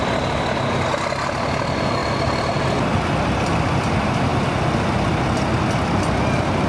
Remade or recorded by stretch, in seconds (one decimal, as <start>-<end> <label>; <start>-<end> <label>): 0.0-6.7 recorded